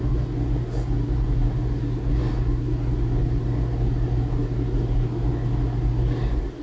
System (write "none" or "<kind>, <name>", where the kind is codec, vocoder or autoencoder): none